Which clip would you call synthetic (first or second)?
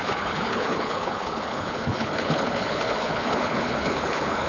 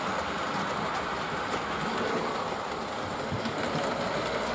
first